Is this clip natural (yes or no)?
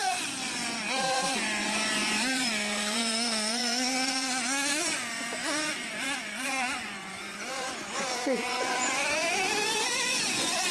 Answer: no